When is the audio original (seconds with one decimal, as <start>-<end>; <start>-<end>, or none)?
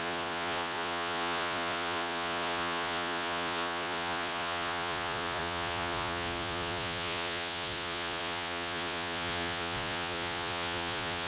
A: none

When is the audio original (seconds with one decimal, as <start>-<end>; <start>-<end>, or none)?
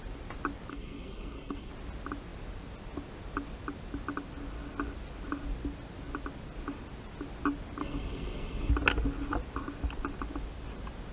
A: 0.0-0.7; 1.7-7.8; 8.7-11.1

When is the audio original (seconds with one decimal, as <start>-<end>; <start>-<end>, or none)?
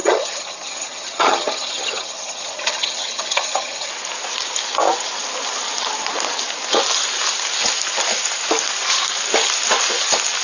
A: 3.9-10.4